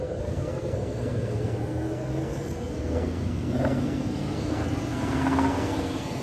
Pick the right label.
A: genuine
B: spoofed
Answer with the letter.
B